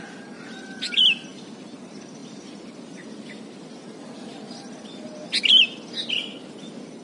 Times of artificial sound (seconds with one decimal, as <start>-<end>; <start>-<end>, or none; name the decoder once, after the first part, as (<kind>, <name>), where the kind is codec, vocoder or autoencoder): none